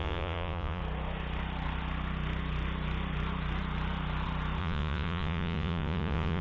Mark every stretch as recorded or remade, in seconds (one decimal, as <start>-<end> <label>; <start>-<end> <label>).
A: 0.0-0.8 remade; 0.8-4.6 recorded; 4.6-6.4 remade